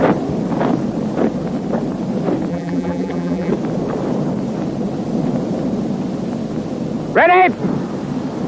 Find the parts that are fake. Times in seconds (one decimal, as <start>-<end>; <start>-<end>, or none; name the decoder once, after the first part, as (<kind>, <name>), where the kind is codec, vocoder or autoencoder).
2.5-3.5 (vocoder, BigVGAN v2)